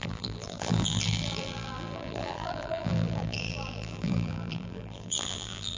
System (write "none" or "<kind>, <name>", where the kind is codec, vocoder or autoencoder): vocoder, BigVGAN v2